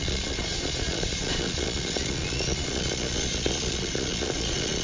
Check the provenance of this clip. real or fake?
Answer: fake